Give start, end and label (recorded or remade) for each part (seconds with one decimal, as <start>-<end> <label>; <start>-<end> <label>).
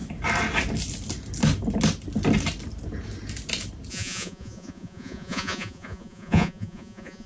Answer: 0.0-3.9 recorded; 3.9-7.3 remade